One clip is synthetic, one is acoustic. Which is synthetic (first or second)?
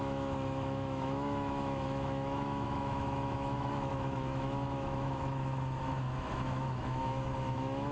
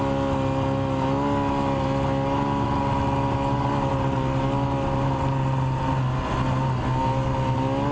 first